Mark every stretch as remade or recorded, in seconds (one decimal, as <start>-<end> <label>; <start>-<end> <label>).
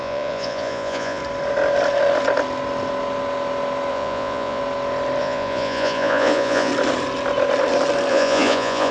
0.0-1.2 remade; 1.2-3.9 recorded; 3.9-4.6 remade; 4.6-5.2 recorded; 5.2-6.7 remade; 6.7-8.1 recorded; 8.1-8.9 remade